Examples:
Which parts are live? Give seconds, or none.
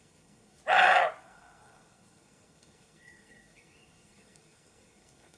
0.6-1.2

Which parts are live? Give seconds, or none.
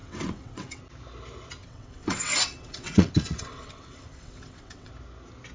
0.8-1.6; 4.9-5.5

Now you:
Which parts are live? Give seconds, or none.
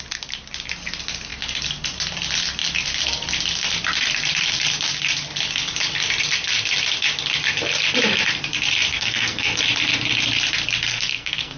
0.0-8.9; 9.6-10.9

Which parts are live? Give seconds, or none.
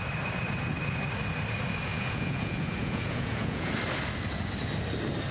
0.0-1.9; 3.7-5.3